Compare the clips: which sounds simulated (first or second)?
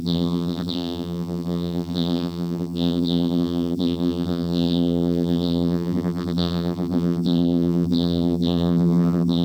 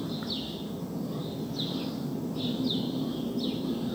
first